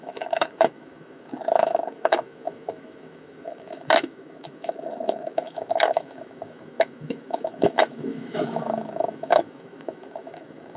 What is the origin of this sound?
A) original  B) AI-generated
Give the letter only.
B